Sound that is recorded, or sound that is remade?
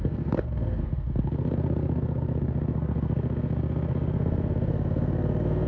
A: remade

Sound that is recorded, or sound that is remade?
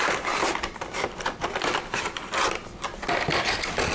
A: recorded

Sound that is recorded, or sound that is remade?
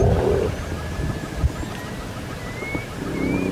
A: recorded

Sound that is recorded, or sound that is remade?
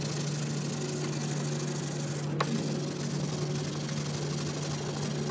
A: recorded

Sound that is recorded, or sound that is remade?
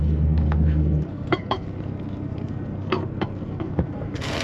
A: remade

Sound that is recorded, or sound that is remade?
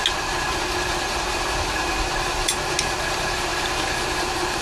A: recorded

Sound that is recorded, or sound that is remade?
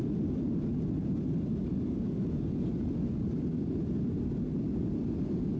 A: recorded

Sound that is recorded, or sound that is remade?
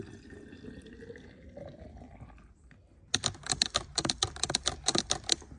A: recorded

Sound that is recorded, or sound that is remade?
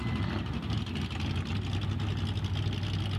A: recorded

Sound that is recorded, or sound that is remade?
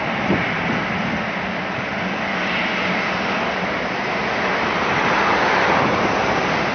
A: recorded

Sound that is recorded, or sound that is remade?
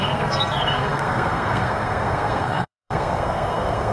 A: remade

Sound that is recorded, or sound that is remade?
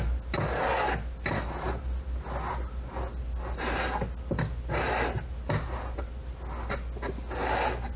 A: recorded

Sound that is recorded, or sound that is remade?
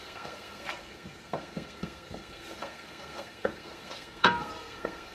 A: remade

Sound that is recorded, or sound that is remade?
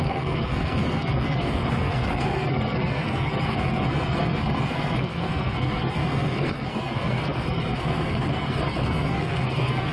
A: remade